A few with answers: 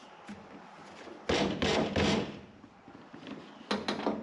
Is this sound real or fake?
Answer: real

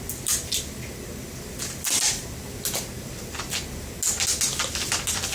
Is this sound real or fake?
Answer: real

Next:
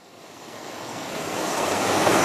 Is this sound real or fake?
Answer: fake